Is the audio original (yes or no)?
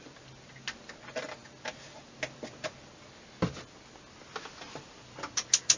yes